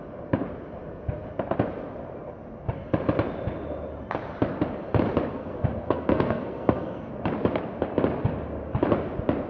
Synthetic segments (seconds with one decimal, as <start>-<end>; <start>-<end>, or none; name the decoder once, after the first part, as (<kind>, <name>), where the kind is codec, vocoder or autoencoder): 5.3-7.1 (codec, SNAC)